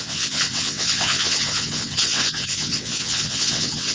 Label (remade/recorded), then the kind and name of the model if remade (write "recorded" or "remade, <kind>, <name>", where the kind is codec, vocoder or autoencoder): remade, vocoder, WaveNeXt